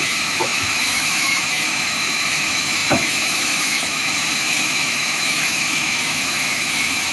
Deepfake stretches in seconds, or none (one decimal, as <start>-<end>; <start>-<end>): 0.0-7.1